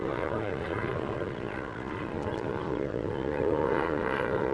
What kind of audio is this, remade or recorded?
remade